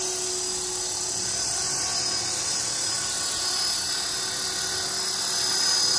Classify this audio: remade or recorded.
recorded